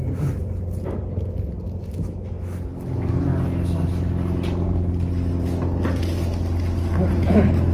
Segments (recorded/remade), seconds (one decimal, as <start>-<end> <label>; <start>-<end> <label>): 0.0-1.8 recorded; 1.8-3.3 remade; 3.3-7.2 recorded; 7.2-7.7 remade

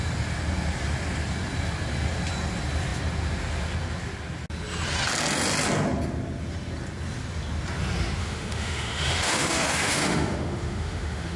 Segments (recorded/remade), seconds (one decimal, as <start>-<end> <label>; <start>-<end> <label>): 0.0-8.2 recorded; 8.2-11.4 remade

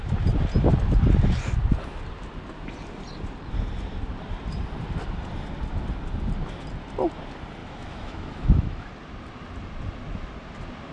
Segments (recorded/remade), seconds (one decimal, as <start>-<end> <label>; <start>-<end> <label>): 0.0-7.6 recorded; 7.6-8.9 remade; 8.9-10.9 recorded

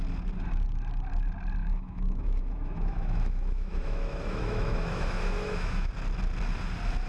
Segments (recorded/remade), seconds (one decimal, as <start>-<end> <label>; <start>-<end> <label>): 0.0-1.6 recorded; 1.6-5.9 remade; 5.9-7.1 recorded

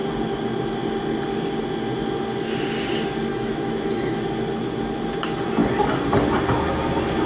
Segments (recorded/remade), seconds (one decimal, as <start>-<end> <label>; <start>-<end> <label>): 0.0-3.3 recorded; 3.3-4.2 remade; 4.2-7.3 recorded

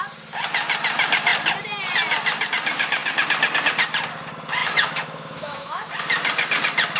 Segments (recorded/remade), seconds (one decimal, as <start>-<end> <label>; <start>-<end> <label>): 0.0-4.6 recorded; 4.6-5.9 remade; 5.9-7.0 recorded